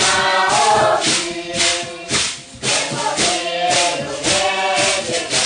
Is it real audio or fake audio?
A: real